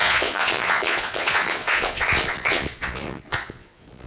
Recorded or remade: remade